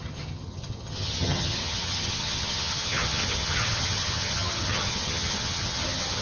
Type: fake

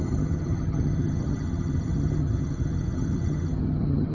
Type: fake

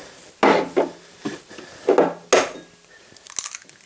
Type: real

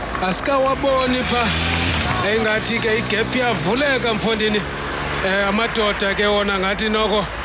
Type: real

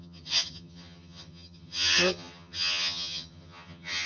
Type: fake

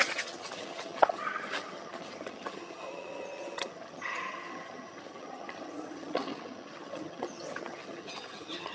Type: fake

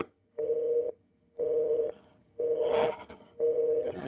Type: fake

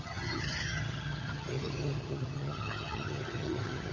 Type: fake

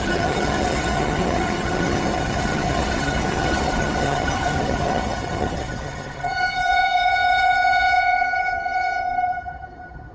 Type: fake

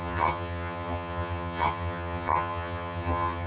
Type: fake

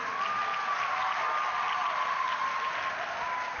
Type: real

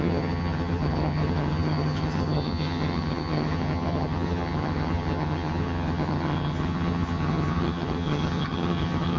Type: fake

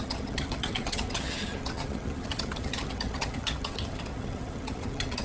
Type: fake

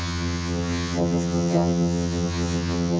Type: fake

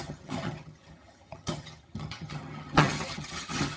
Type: fake